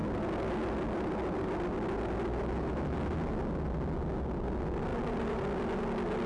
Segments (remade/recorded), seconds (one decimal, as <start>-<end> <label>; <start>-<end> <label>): 0.0-4.9 recorded; 4.9-5.8 remade; 5.8-6.3 recorded